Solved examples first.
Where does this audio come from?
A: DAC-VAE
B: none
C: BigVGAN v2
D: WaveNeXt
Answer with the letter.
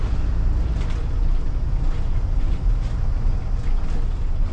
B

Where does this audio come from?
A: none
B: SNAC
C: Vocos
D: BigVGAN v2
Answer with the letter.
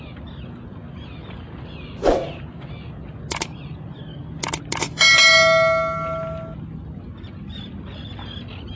A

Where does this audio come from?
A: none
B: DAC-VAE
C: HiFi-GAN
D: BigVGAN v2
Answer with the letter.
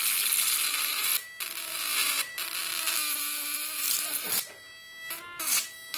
A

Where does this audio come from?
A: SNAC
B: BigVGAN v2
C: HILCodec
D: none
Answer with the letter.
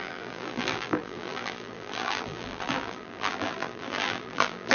B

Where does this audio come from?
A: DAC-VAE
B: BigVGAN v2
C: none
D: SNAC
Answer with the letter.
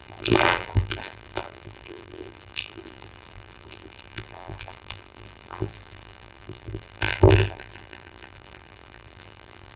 B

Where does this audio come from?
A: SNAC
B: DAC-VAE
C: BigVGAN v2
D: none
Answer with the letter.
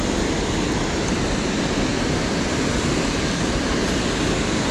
D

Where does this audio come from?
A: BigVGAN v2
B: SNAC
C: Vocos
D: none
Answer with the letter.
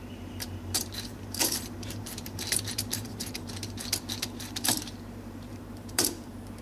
A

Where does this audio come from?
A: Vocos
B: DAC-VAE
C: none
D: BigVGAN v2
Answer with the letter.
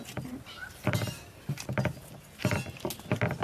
C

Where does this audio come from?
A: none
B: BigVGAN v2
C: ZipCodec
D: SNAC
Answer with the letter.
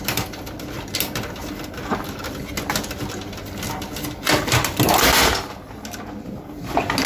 A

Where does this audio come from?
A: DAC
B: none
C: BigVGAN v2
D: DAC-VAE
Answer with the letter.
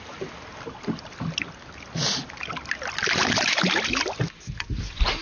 B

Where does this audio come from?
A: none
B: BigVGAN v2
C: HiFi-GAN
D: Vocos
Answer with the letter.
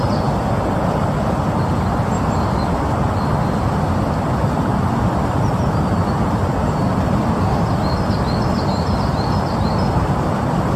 A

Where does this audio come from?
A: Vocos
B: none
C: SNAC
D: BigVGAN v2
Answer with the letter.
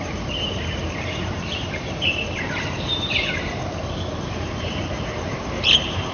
D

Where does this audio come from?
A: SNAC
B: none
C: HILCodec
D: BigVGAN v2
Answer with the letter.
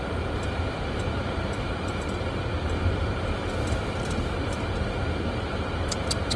B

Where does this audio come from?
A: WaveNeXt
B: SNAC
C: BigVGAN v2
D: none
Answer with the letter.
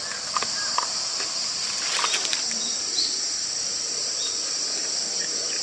C